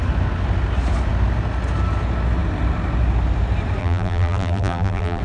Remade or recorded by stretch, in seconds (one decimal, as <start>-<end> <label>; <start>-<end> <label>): 0.0-3.8 recorded; 3.8-5.2 remade